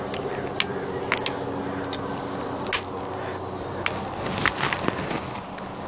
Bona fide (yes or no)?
yes